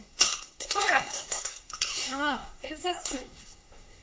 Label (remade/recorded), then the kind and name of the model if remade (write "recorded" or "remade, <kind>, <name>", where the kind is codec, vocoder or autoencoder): remade, codec, SNAC